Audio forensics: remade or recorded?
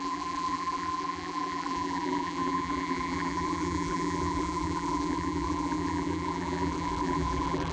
remade